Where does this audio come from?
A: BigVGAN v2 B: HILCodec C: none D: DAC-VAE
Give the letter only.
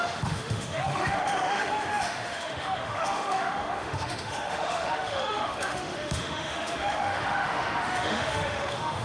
D